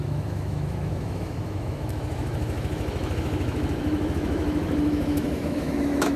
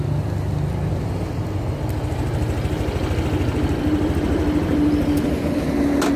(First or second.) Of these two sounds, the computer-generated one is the first